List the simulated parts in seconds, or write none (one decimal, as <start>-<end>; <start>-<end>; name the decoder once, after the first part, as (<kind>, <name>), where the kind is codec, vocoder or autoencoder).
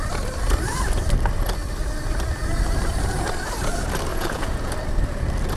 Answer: 4.1-4.7 (vocoder, Vocos)